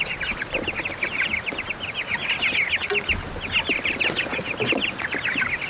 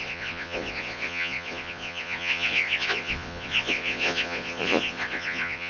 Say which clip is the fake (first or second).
second